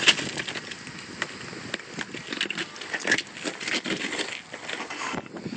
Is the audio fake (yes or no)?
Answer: no